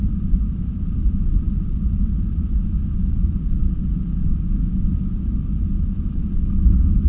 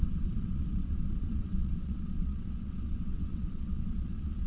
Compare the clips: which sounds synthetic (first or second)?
second